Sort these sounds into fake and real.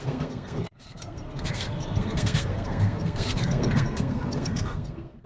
fake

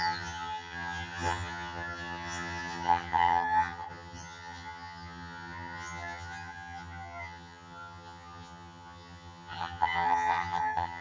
fake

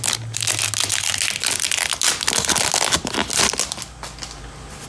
real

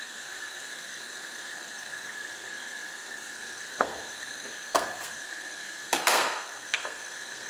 fake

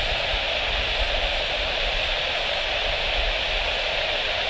real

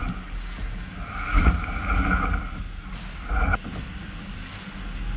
real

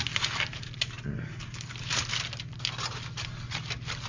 real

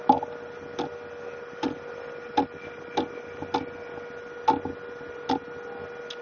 real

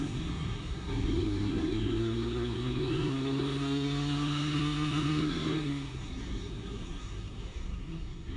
fake